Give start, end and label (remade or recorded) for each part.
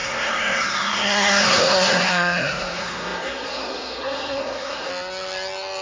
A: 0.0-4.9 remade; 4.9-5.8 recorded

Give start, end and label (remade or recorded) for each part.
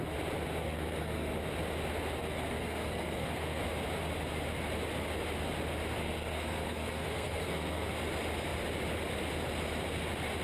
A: 0.0-0.6 recorded; 0.6-1.3 remade; 1.3-2.2 recorded; 2.2-3.6 remade; 3.6-6.0 recorded; 6.0-7.9 remade; 7.9-10.4 recorded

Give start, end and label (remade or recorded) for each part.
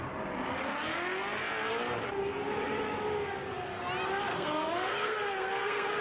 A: 0.0-4.3 recorded; 4.3-6.0 remade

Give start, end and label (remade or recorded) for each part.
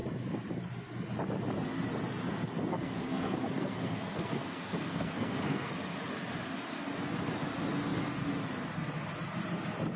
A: 0.0-2.7 recorded; 2.7-5.7 remade; 5.7-10.0 recorded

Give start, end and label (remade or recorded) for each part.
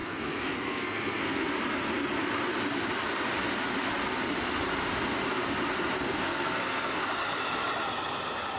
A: 0.0-1.5 remade; 1.5-6.1 recorded; 6.1-7.0 remade; 7.0-8.6 recorded